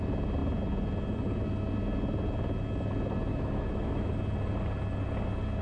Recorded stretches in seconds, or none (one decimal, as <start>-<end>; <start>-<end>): 0.0-3.3; 4.1-5.6